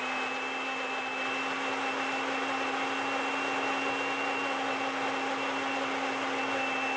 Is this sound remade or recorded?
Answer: recorded